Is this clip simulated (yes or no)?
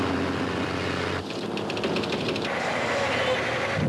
no